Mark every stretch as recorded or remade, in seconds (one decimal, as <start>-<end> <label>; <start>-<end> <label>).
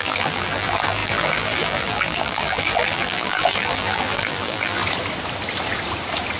0.0-4.8 remade; 4.8-6.4 recorded